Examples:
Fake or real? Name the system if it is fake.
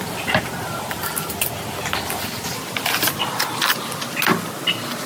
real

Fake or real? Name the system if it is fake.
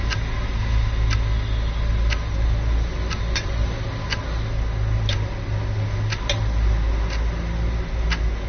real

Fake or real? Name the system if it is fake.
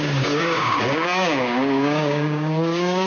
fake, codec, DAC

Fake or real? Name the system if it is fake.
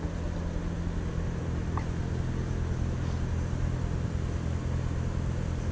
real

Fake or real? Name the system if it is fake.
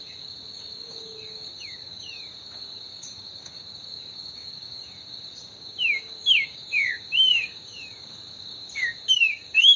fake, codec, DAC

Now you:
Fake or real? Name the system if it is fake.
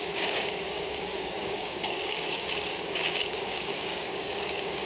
fake, codec, DAC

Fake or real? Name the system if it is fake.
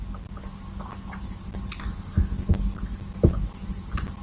real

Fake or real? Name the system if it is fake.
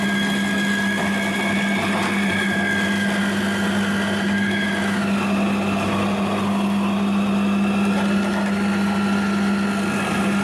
real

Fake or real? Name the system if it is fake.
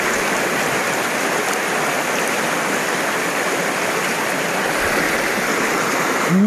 real